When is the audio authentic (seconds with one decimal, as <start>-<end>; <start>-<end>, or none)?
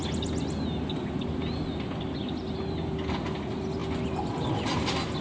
0.0-5.2